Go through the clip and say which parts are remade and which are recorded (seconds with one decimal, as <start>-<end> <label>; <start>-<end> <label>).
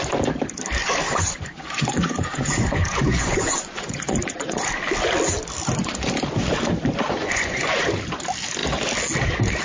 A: 0.0-0.8 recorded; 0.8-4.7 remade; 4.7-7.2 recorded; 7.2-7.8 remade; 7.8-9.6 recorded